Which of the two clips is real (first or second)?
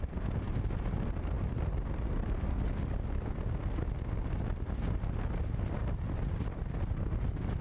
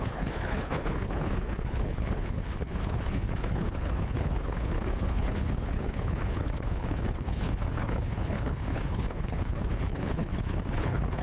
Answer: first